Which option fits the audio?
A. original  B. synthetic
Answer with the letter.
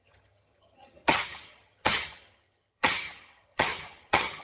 B